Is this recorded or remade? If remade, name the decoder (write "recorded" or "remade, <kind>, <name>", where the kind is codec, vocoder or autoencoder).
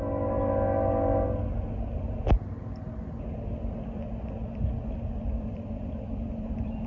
recorded